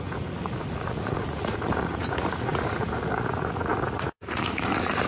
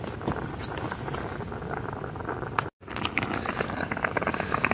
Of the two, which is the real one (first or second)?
second